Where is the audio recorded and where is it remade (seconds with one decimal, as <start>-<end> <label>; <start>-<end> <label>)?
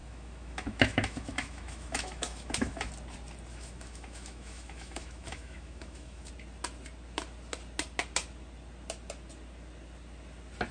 0.0-2.9 remade; 2.9-3.5 recorded; 3.5-6.3 remade; 6.3-10.7 recorded